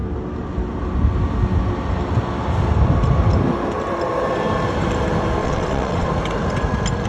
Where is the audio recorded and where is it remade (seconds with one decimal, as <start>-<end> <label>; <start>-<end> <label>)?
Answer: 0.0-5.4 recorded; 5.4-6.1 remade; 6.1-7.1 recorded